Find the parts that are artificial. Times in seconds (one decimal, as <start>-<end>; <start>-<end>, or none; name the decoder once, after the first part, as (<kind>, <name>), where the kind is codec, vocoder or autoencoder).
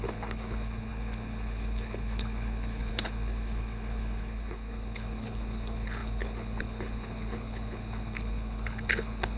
0.0-9.4 (codec, HILCodec)